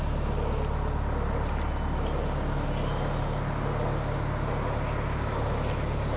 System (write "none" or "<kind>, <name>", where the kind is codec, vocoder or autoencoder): none